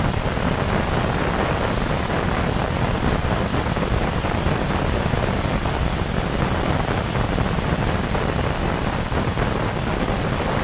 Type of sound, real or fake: real